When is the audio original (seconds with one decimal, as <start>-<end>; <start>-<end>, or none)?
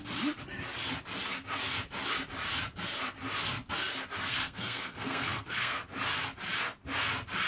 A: 0.0-4.3; 5.8-7.5